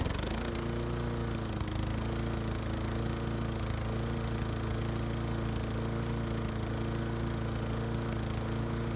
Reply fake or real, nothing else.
real